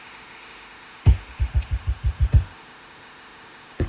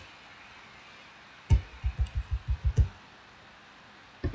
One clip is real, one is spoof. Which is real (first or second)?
second